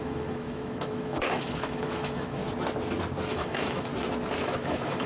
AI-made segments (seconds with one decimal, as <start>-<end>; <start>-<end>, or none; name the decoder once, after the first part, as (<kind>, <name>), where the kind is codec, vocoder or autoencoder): 0.0-2.4 (autoencoder, DAC-VAE); 3.3-3.9; 4.4-5.1